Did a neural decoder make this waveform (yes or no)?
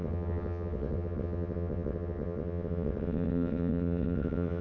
yes